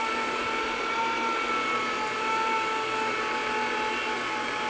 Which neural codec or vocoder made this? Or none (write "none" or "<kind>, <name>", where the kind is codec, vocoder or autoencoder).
none